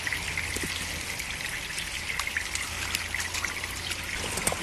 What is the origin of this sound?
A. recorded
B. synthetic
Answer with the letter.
A